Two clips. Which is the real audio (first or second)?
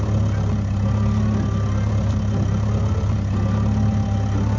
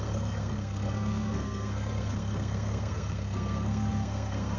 first